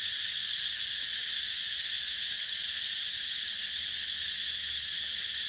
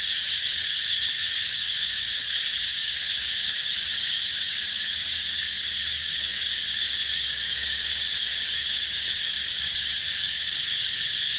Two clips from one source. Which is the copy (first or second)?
second